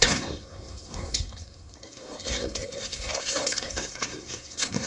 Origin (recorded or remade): remade